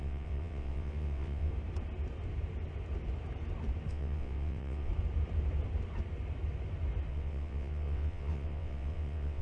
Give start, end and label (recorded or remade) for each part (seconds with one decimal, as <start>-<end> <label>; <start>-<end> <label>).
0.0-1.5 remade; 1.5-3.9 recorded; 3.9-4.9 remade; 4.9-7.1 recorded; 7.1-9.4 remade